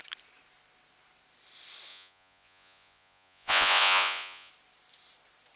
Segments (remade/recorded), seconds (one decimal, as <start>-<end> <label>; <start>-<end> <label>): 0.0-1.9 recorded; 1.9-4.5 remade; 4.5-5.6 recorded